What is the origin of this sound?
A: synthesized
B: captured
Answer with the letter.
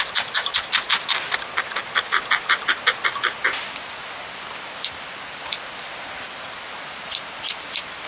B